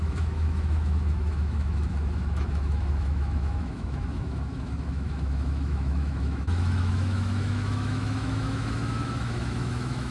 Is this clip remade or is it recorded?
remade